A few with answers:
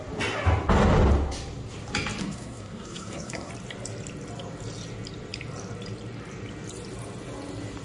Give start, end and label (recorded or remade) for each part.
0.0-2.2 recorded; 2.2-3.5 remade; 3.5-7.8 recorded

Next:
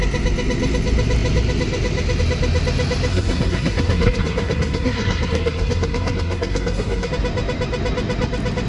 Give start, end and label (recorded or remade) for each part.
0.0-3.1 recorded; 3.1-7.1 remade; 7.1-8.7 recorded

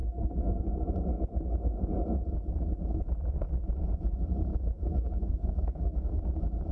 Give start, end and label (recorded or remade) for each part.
0.0-0.5 remade; 0.5-4.5 recorded; 4.5-6.2 remade; 6.2-6.7 recorded

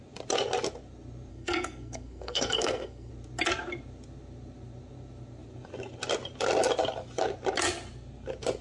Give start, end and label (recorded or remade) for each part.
0.0-1.3 recorded; 1.3-3.1 remade; 3.1-8.6 recorded

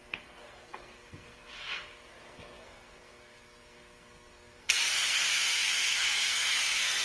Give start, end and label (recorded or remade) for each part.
0.0-7.0 remade

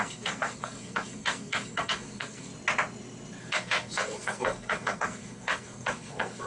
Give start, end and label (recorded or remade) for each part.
0.0-2.5 remade; 2.5-3.4 recorded; 3.4-6.5 remade

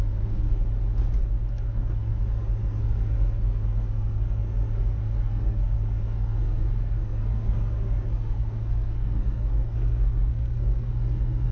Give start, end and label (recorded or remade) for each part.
0.0-0.6 remade; 0.6-1.5 recorded; 1.5-11.5 remade